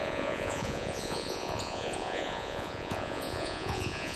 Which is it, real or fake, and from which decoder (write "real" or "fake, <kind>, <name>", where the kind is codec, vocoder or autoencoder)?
fake, vocoder, Vocos